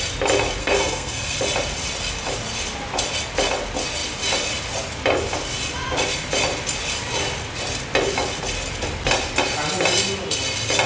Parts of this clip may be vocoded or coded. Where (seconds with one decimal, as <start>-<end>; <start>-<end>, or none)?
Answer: 0.6-1.4